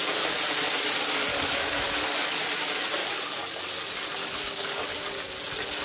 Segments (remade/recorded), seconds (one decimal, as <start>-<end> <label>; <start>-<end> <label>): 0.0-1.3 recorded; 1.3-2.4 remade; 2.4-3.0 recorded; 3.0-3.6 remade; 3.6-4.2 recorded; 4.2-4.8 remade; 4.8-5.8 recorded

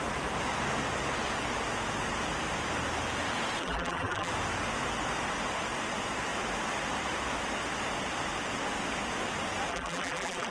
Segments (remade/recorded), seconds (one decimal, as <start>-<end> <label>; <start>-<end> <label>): 0.0-3.6 recorded; 3.6-4.3 remade; 4.3-9.7 recorded; 9.7-10.5 remade

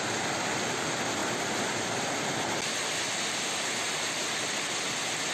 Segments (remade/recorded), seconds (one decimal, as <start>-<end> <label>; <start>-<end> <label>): 0.0-5.3 recorded

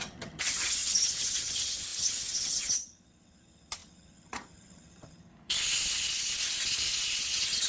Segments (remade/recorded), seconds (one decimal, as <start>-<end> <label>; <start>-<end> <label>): 0.0-5.3 remade; 5.3-7.2 recorded; 7.2-7.7 remade

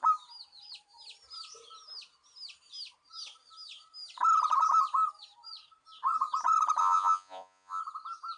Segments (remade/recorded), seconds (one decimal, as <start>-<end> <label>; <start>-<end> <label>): 0.0-6.8 recorded; 6.8-7.8 remade; 7.8-8.4 recorded